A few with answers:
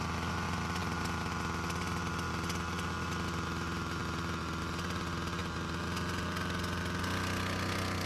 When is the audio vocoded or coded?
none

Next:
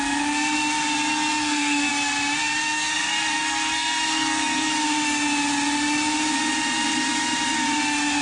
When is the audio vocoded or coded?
1.3-1.9 (codec, SNAC); 2.6-4.7

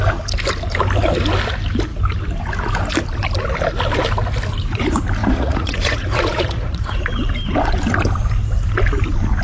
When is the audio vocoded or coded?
5.2-7.0 (vocoder, Vocos)

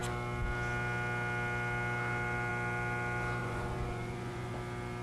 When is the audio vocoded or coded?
3.4-4.5 (vocoder, Vocos)